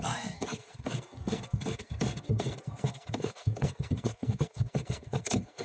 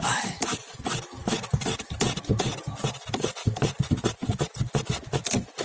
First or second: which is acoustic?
second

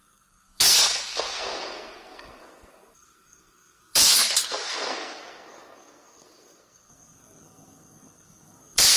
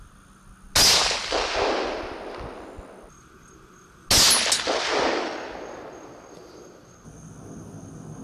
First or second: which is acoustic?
second